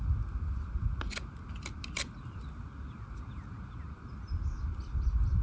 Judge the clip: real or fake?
real